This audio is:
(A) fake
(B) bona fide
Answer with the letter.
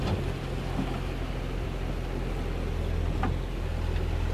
B